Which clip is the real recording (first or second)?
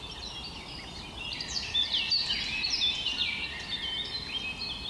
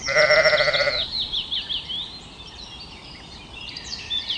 first